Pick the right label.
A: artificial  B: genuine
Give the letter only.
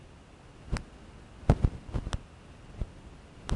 B